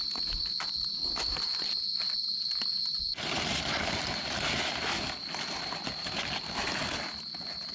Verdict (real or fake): real